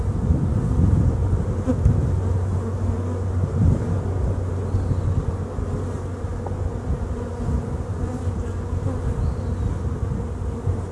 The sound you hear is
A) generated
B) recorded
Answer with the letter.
B